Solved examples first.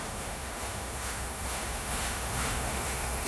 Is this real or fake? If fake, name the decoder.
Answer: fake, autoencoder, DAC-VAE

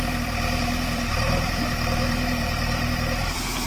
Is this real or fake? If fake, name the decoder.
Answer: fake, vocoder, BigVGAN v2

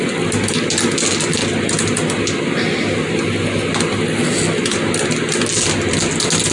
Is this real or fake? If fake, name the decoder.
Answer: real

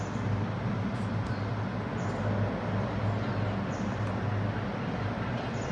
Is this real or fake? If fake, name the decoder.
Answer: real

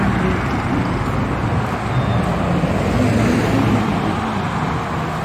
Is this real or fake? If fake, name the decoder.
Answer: real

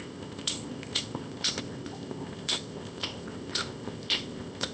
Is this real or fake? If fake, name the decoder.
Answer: fake, codec, ZipCodec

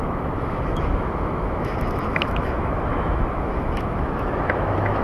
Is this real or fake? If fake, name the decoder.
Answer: fake, autoencoder, DAC-VAE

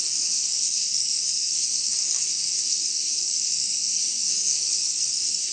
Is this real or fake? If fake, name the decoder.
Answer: fake, codec, SNAC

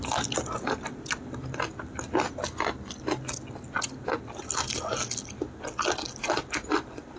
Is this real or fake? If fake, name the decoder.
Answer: real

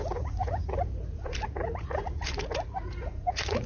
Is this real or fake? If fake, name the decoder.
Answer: fake, vocoder, Vocos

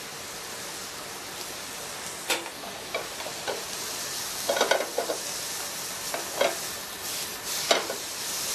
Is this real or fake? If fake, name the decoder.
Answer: real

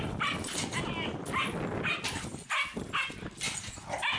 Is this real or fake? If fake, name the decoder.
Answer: real